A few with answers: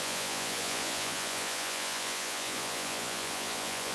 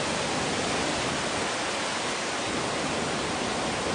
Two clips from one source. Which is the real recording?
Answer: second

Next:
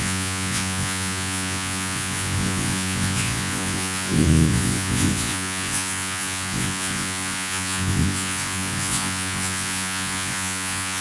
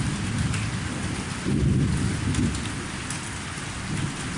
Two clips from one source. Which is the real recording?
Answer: second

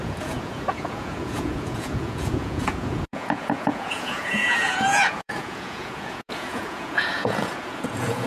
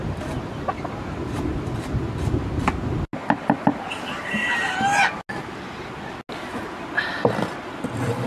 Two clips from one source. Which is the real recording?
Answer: second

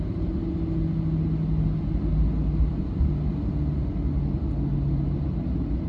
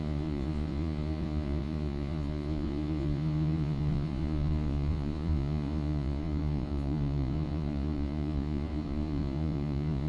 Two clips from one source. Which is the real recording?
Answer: first